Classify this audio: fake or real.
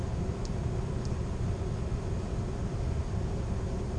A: real